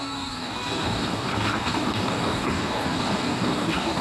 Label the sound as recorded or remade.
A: remade